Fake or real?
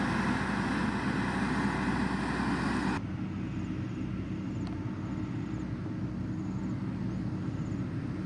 real